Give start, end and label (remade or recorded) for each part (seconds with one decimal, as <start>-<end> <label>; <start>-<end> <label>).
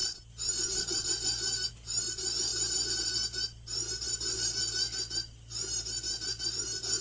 0.0-7.0 recorded